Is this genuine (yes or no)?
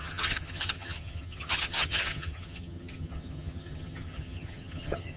no